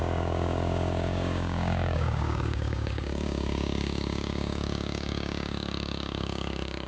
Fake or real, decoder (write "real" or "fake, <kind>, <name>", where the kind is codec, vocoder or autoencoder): fake, codec, DAC